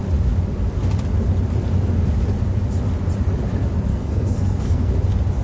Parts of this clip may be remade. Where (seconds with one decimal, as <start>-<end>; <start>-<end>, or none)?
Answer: 3.9-4.9